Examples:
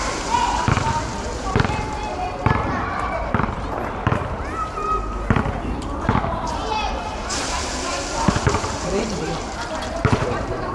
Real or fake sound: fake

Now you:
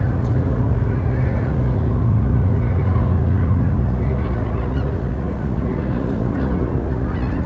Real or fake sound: fake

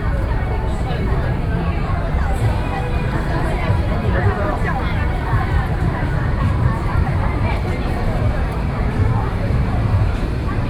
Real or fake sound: fake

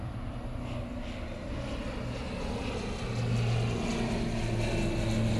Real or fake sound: real